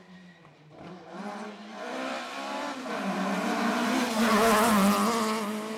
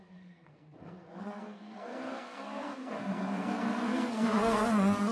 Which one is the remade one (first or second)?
second